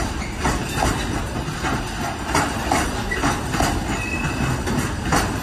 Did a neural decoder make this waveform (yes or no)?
no